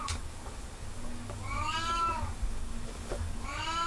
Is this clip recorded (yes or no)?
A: no